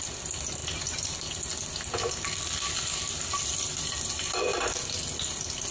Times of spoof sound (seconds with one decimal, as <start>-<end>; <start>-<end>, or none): none